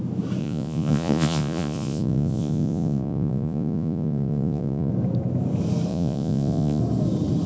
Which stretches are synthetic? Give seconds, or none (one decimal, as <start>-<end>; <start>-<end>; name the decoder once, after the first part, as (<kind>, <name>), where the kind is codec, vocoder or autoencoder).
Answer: 0.4-4.9 (vocoder, Vocos); 5.9-6.8